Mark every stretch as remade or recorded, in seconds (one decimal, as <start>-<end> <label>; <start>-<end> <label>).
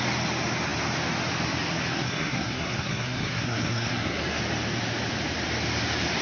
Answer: 0.0-1.9 recorded; 1.9-4.4 remade; 4.4-6.2 recorded